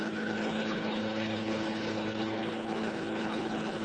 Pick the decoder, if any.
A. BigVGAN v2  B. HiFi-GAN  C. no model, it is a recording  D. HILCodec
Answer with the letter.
D